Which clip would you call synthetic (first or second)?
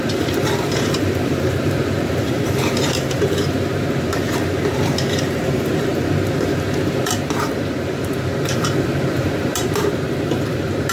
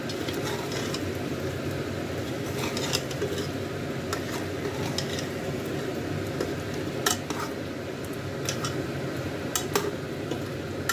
first